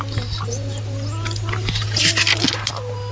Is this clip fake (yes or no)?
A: no